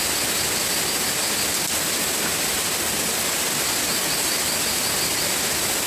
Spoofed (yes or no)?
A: no